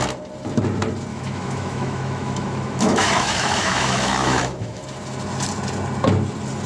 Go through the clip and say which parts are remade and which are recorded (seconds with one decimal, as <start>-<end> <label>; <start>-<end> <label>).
0.0-1.1 recorded; 1.1-4.8 remade; 4.8-6.7 recorded